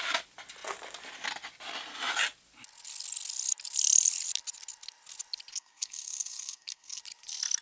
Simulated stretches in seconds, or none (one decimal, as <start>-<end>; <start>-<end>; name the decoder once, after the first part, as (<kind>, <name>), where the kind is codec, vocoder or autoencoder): 5.5-7.0 (codec, SNAC)